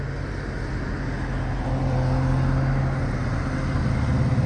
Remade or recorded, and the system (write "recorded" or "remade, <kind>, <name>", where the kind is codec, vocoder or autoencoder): recorded